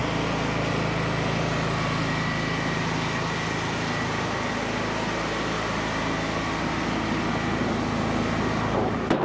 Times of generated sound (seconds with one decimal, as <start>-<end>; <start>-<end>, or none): none